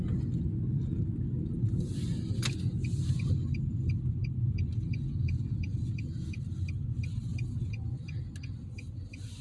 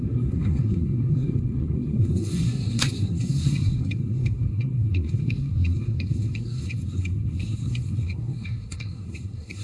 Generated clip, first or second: second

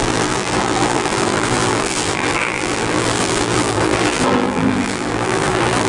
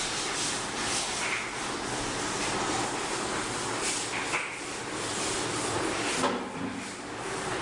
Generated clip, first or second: first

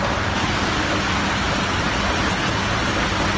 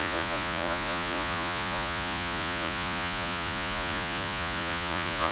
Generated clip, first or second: second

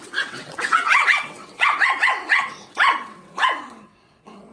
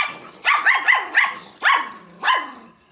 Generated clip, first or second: first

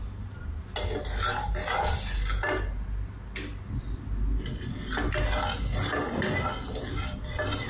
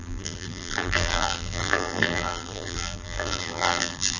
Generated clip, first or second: second